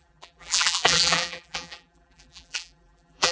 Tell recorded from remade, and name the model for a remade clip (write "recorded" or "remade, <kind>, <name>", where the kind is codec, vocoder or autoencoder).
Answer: remade, vocoder, BigVGAN v2